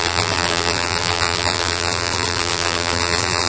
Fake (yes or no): yes